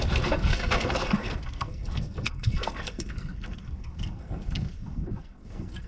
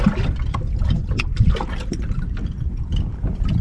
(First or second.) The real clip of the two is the second